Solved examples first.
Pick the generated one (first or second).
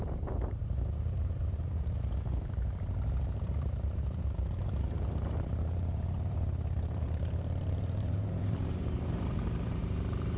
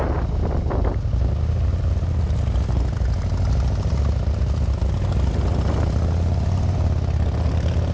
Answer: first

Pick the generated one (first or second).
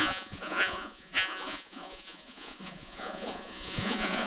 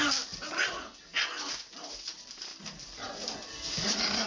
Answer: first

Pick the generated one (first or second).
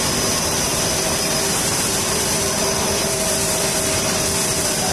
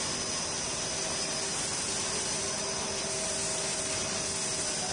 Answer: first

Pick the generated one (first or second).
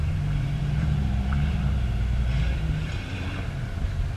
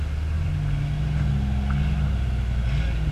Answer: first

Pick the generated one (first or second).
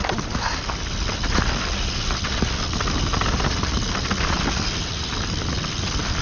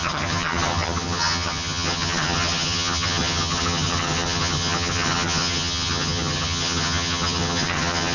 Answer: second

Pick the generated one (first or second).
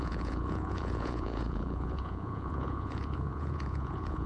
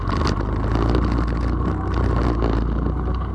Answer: first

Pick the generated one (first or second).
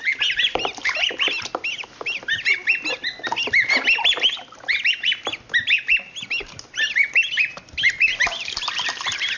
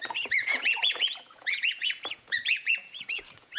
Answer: second